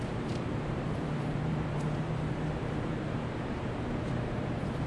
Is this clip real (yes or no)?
no